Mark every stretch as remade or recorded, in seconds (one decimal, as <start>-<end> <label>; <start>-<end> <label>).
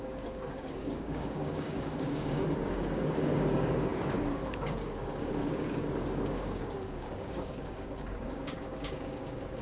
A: 0.0-9.6 remade